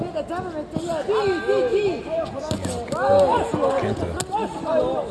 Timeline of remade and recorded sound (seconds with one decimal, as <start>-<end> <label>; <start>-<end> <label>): 0.0-5.1 recorded